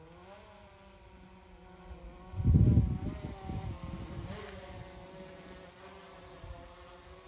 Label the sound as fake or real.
real